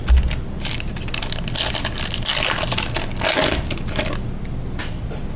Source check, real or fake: real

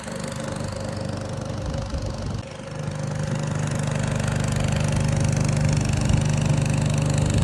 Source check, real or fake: real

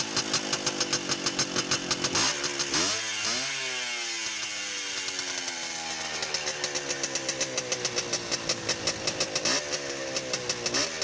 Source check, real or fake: real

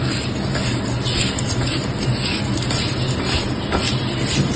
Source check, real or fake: real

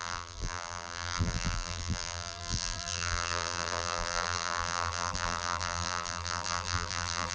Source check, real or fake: fake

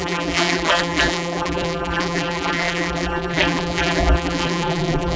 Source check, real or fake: fake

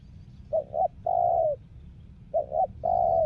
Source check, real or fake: real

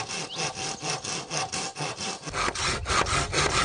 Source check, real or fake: real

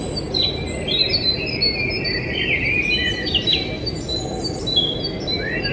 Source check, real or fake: real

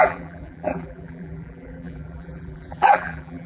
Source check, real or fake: fake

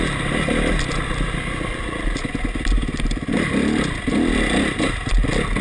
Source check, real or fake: fake